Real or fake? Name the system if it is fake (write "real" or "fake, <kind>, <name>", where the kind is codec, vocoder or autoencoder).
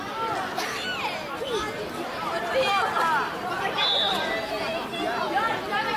real